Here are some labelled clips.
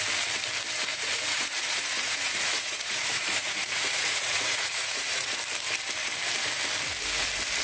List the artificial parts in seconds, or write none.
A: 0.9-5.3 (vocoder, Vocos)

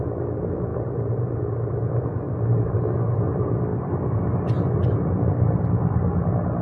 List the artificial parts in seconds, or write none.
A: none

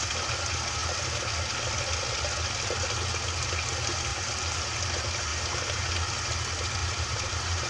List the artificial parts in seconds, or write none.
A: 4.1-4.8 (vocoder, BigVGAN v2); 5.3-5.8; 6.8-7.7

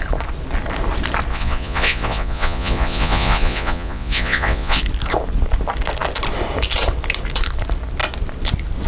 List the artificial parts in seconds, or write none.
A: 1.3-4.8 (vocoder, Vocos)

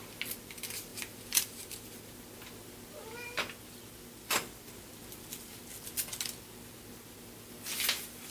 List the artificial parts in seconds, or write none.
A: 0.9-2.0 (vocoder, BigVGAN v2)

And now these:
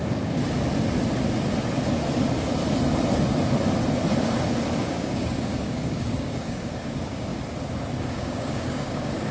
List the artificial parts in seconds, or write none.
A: 0.0-0.4 (codec, DAC); 4.8-7.3; 8.1-9.3